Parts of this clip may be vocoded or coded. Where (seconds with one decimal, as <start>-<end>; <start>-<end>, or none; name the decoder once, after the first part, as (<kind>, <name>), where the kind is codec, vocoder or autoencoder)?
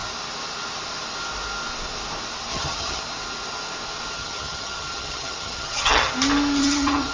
2.5-3.0 (vocoder, HiFi-GAN); 4.2-6.1; 6.6-7.1